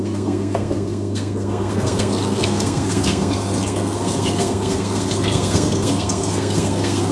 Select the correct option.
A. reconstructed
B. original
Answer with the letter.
A